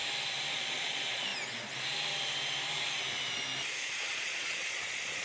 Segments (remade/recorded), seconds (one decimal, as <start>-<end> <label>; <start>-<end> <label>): 0.0-0.5 recorded; 0.5-1.3 remade; 1.3-4.1 recorded; 4.1-5.2 remade